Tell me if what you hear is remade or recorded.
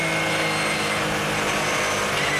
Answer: recorded